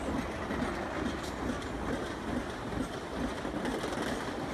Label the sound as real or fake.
real